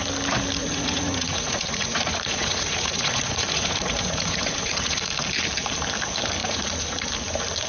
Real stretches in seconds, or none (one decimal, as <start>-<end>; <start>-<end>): 0.0-0.6; 5.1-6.4; 7.1-7.7